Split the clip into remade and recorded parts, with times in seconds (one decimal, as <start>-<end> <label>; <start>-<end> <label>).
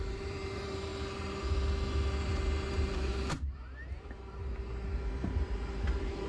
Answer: 0.0-0.9 remade; 0.9-2.2 recorded; 2.2-4.4 remade; 4.4-5.1 recorded; 5.1-6.3 remade